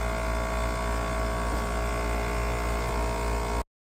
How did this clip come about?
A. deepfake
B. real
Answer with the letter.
B